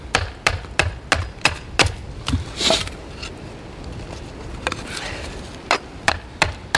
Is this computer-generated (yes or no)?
no